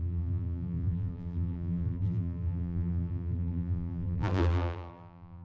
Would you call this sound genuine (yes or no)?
no